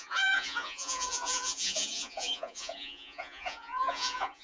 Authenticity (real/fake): fake